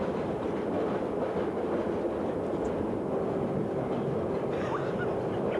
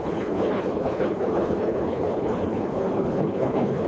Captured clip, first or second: first